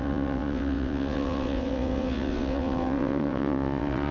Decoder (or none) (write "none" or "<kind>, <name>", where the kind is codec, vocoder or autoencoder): vocoder, WaveNeXt